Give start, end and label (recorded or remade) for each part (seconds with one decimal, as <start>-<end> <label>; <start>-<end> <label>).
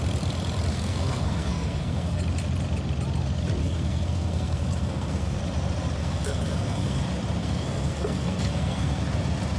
0.0-0.7 recorded; 0.7-2.2 remade; 2.2-3.6 recorded; 3.6-5.4 remade; 5.4-6.0 recorded; 6.0-7.0 remade; 7.0-7.4 recorded; 7.4-9.0 remade; 9.0-9.6 recorded